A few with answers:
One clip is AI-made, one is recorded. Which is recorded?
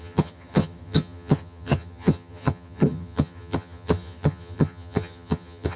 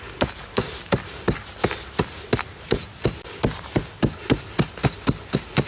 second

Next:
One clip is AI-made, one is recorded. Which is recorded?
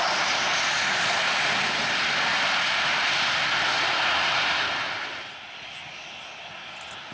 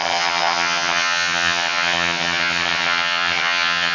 first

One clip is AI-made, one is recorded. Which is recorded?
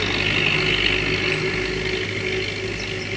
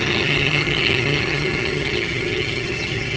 first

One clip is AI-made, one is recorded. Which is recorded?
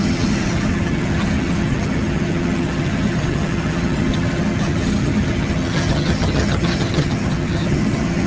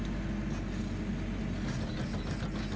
second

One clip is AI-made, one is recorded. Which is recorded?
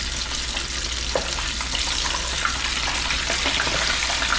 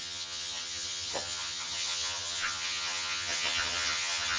first